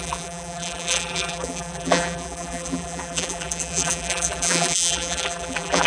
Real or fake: fake